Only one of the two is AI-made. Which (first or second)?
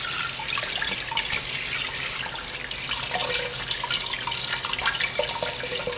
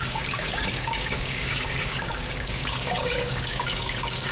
second